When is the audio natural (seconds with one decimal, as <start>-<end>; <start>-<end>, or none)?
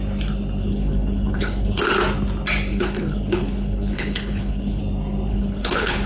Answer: 0.0-0.6; 1.8-2.7; 4.8-5.3